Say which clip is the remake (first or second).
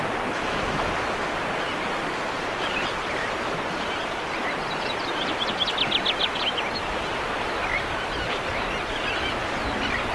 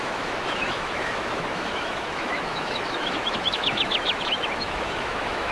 second